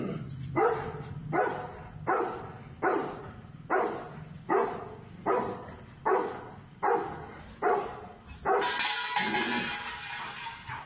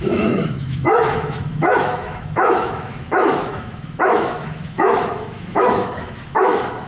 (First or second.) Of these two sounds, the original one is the first